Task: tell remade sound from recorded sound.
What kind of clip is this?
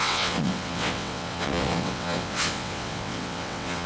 remade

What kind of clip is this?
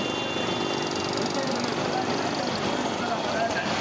recorded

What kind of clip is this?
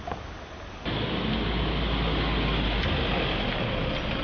recorded